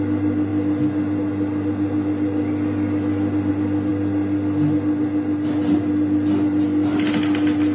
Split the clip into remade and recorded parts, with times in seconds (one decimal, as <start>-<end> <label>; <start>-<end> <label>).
0.0-7.7 recorded